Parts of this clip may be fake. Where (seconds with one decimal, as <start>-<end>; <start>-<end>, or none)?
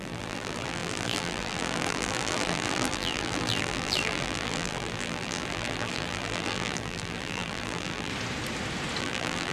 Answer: 0.0-8.1; 9.0-9.5